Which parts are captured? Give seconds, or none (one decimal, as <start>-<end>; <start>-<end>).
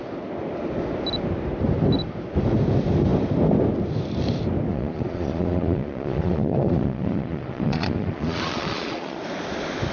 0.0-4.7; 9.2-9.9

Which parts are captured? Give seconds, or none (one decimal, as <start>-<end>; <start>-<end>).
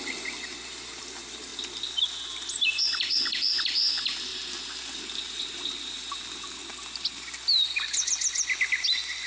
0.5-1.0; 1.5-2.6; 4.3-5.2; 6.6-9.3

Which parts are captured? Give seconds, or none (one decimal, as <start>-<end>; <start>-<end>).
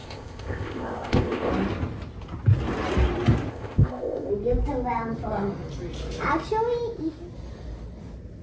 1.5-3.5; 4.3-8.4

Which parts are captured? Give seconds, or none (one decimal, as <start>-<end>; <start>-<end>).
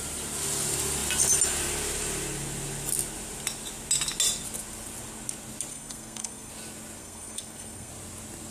0.0-5.7; 6.5-7.0; 7.9-8.5